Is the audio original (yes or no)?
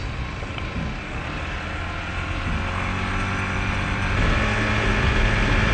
yes